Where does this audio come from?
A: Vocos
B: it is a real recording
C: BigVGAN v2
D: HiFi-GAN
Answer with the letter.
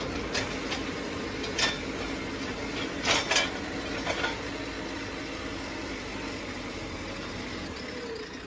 B